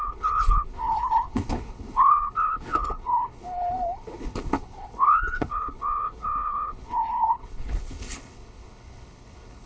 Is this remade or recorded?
remade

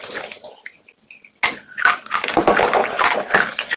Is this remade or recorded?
recorded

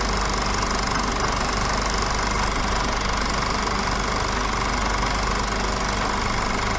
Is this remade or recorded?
recorded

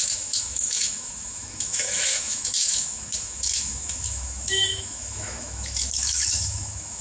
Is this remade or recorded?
remade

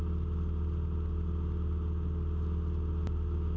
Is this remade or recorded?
recorded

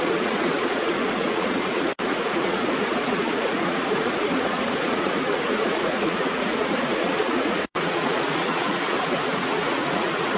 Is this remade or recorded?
remade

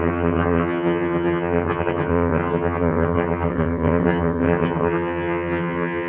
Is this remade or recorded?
remade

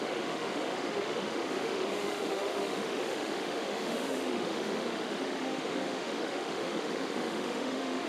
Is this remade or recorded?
remade